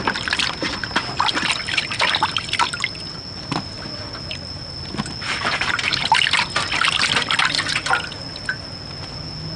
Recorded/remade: recorded